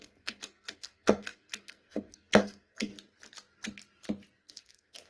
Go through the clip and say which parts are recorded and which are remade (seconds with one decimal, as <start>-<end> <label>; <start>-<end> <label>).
0.0-2.9 remade; 2.9-4.4 recorded; 4.4-5.1 remade